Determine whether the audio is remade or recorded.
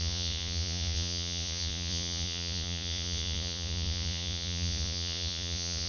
remade